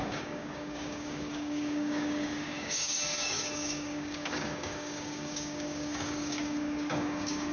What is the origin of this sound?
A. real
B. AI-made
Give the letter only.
B